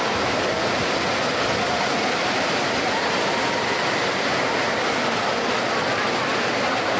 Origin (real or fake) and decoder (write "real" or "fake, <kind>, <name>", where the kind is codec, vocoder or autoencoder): real